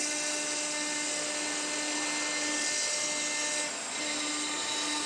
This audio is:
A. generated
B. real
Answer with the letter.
B